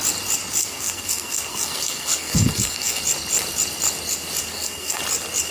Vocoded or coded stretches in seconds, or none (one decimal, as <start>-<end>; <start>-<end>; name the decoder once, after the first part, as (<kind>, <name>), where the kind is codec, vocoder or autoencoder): 0.6-3.0 (codec, SNAC); 4.5-5.0